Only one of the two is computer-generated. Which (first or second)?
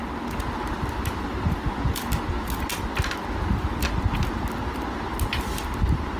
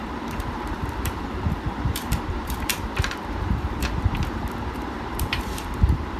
second